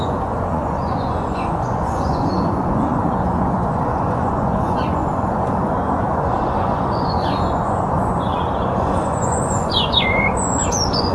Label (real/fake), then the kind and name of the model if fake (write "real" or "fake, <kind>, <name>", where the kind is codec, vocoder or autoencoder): fake, vocoder, Vocos